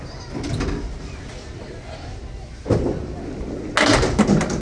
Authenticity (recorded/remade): recorded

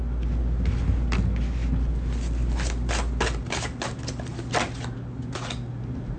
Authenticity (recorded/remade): recorded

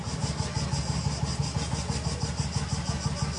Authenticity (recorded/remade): recorded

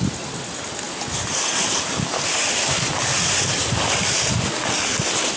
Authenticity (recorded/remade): recorded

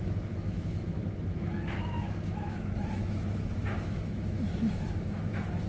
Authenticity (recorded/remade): remade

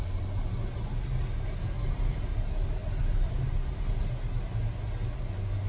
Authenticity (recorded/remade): recorded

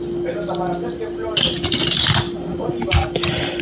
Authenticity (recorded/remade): recorded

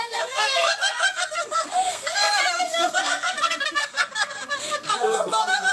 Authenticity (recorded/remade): remade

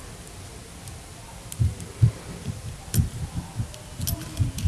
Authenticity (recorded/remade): recorded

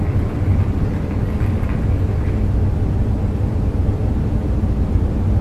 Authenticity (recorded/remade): recorded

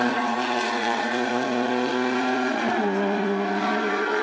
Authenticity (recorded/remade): remade